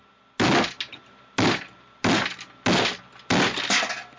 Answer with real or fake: real